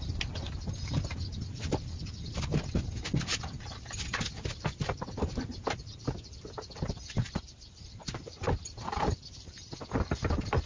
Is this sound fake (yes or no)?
no